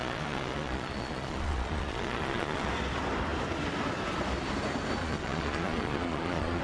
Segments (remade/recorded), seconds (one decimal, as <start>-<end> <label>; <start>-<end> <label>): 0.0-2.7 remade; 2.7-5.0 recorded; 5.0-6.6 remade

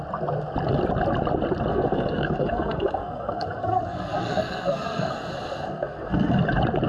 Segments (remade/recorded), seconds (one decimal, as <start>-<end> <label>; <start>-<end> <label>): 0.0-1.7 recorded; 1.7-5.1 remade; 5.1-5.7 recorded; 5.7-6.4 remade; 6.4-6.9 recorded

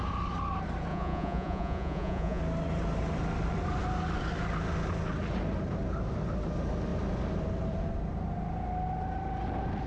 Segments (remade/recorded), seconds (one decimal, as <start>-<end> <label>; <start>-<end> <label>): 0.0-0.9 recorded; 0.9-2.4 remade; 2.4-9.9 recorded